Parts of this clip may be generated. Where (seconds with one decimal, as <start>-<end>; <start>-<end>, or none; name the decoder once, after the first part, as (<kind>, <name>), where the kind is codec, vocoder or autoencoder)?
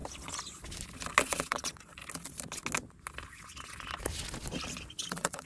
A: 1.2-2.0 (vocoder, WaveNeXt); 5.1-5.5